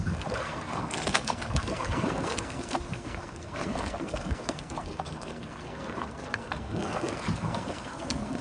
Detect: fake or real fake